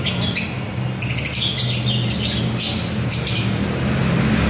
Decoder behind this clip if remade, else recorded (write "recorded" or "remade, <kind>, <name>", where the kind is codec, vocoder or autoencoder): recorded